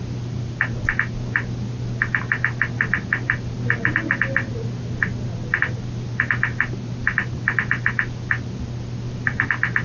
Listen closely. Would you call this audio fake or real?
real